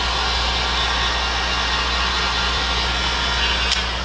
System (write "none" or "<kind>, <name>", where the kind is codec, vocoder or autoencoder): none